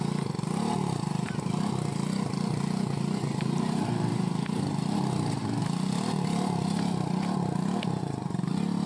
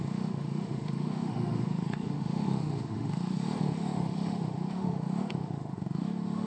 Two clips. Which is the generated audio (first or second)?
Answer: second